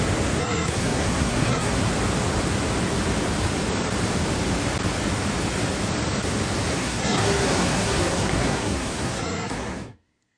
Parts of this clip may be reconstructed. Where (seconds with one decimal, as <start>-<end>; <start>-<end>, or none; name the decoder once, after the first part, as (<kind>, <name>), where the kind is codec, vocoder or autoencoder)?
0.4-1.8 (codec, SNAC); 6.7-10.4